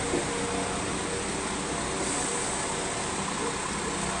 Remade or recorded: recorded